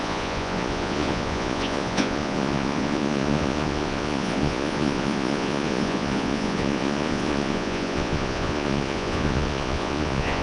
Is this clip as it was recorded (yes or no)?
no